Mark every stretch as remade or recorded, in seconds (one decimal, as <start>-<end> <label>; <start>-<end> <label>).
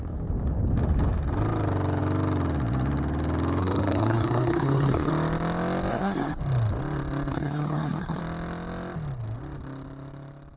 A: 0.0-3.6 recorded; 3.6-5.1 remade; 5.1-5.9 recorded; 5.9-6.4 remade; 6.4-7.3 recorded; 7.3-8.2 remade; 8.2-10.6 recorded